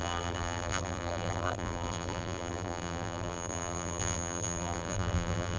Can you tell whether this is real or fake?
fake